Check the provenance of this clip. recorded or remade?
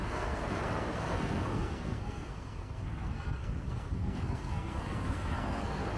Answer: remade